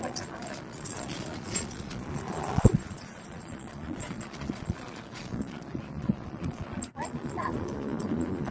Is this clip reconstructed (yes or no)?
yes